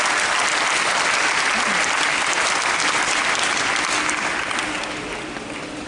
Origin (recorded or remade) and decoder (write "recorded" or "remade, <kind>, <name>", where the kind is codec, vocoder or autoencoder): recorded